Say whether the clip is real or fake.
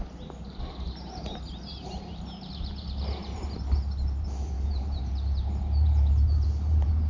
fake